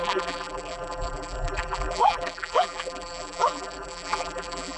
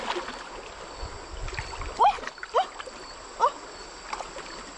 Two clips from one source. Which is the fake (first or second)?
first